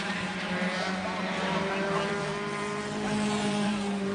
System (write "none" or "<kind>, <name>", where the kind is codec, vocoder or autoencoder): vocoder, BigVGAN v2